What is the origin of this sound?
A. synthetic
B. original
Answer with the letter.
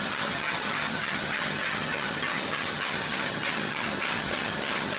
A